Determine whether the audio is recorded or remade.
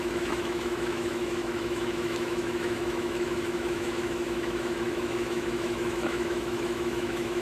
remade